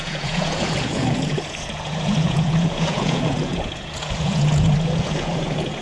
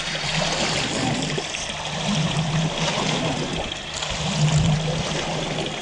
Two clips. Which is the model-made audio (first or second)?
first